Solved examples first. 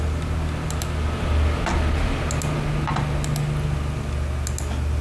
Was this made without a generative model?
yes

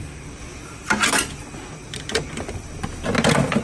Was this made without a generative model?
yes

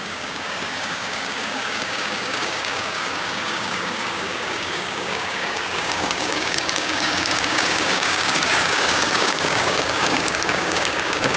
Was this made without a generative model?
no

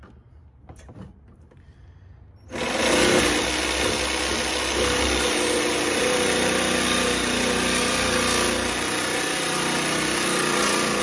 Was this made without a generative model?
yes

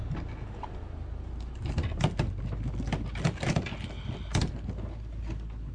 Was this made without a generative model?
yes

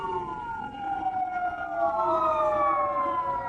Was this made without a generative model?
yes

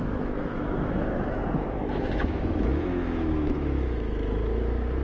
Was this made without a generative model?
no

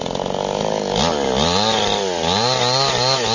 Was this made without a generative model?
yes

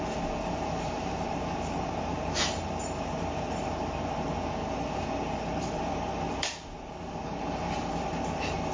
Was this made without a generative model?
no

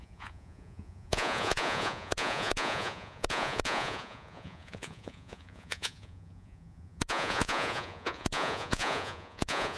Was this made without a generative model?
no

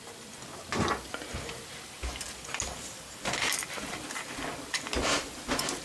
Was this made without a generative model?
yes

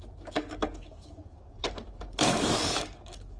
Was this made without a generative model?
no